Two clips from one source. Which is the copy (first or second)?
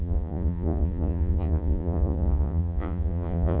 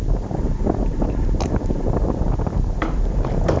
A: first